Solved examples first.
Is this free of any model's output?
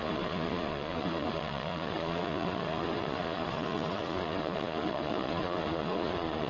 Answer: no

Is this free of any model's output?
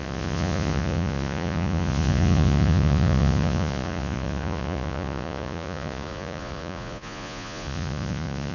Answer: no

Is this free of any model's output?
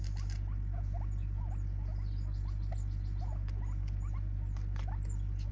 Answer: yes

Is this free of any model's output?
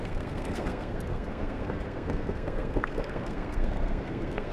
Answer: no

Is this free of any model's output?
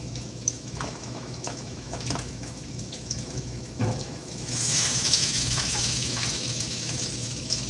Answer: no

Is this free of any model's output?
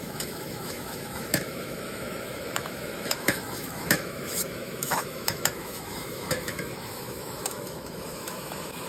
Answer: no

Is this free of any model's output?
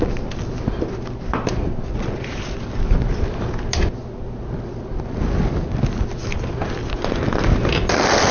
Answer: yes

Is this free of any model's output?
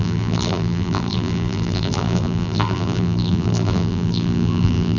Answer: no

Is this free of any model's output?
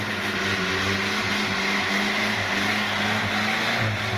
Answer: yes